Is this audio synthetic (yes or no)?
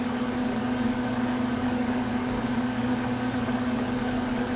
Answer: yes